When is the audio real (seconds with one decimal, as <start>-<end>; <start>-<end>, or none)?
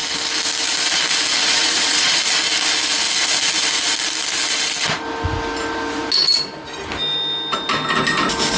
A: 0.0-1.4; 2.2-8.6